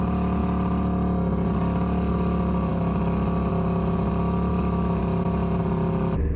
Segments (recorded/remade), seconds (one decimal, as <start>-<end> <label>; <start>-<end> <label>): 0.0-4.5 recorded; 4.5-5.0 remade; 5.0-6.4 recorded